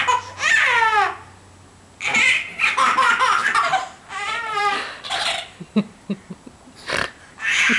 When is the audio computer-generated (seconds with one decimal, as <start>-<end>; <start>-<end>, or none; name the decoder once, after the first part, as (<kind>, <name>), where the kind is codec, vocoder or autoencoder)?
3.4-6.8 (vocoder, BigVGAN v2)